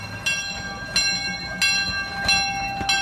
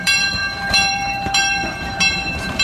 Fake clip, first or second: second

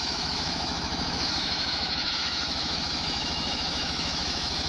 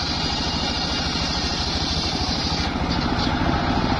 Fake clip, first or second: first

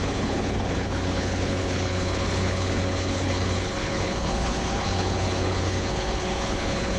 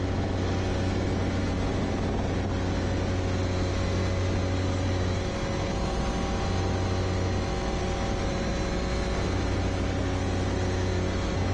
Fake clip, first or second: first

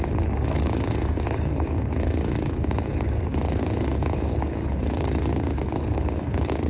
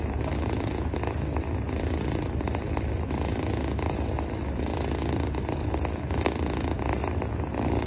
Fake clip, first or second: first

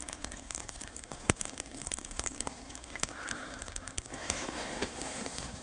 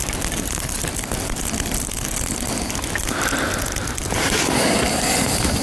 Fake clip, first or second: first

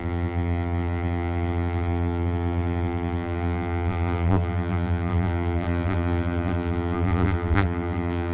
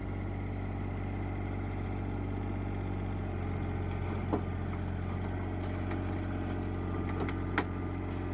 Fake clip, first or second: first